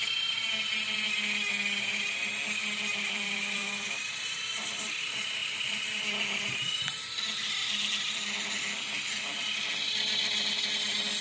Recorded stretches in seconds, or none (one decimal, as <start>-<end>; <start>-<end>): 0.0-2.6; 5.0-5.4; 6.0-11.2